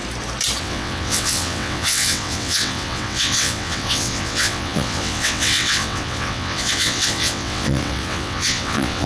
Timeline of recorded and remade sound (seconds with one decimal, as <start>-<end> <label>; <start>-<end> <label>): 0.0-0.6 recorded; 0.6-9.1 remade